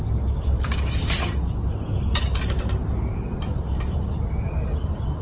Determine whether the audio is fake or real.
real